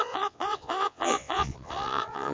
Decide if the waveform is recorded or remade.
remade